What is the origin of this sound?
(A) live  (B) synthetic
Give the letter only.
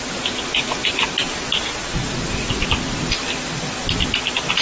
A